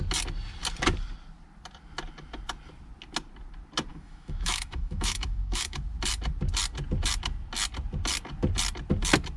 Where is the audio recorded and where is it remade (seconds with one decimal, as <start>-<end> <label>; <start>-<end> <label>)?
0.0-3.9 recorded; 3.9-5.8 remade; 5.8-9.4 recorded